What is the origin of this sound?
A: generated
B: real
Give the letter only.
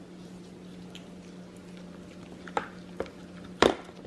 B